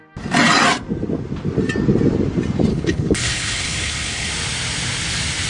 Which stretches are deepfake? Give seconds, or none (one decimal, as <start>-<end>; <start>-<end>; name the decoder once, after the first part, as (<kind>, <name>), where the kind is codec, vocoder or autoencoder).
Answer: 2.7-4.3 (codec, HILCodec)